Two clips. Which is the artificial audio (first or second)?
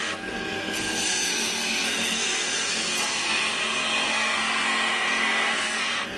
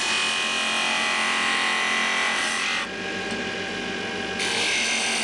first